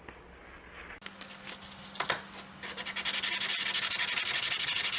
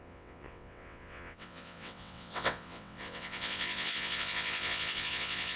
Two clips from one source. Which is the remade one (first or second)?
second